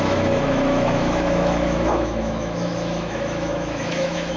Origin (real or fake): fake